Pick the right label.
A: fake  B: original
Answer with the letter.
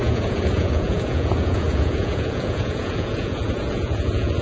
A